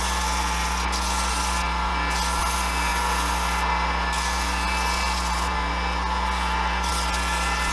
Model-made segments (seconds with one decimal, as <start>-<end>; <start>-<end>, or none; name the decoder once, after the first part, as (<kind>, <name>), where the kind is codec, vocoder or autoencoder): none